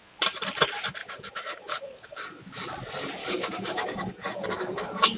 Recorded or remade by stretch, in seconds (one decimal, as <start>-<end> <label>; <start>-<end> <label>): 0.0-1.0 recorded; 1.0-2.4 remade; 2.4-3.2 recorded; 3.2-5.2 remade